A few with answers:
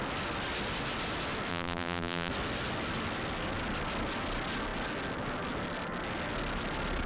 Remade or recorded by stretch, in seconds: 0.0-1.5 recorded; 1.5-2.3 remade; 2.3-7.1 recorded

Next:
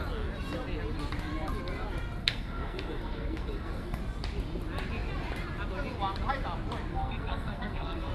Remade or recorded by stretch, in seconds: 0.0-2.2 recorded; 2.2-4.0 remade; 4.0-6.9 recorded; 6.9-8.1 remade

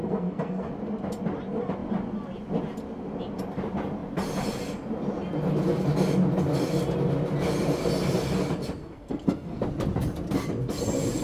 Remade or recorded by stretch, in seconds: 0.0-0.7 remade; 0.7-8.8 recorded; 8.8-9.6 remade; 9.6-11.2 recorded

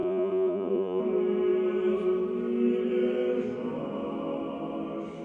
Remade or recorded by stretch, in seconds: 0.0-1.0 remade; 1.0-5.2 recorded